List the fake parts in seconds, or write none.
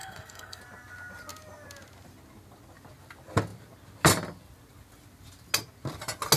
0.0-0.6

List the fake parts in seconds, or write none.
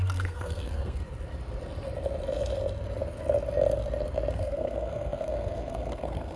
0.0-1.0; 4.3-6.4